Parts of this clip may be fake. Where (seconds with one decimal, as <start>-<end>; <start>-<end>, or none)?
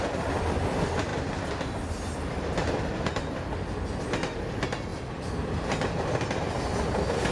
none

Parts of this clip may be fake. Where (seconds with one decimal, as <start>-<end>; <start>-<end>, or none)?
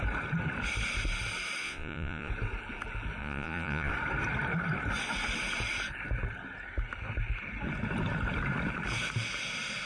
1.6-2.3; 3.2-3.9